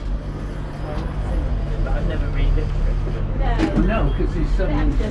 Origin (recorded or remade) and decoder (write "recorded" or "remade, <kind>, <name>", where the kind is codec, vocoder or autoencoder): recorded